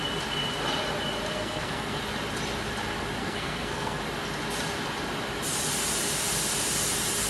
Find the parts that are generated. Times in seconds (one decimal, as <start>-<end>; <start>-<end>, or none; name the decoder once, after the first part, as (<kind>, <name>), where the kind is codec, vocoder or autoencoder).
1.3-2.0 (codec, SNAC); 3.2-4.0